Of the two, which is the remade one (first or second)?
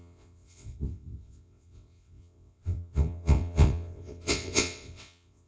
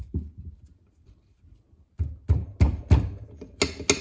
first